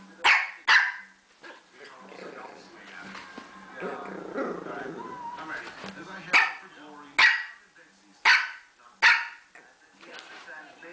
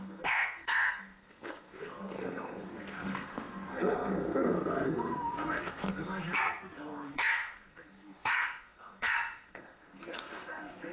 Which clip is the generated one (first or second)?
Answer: second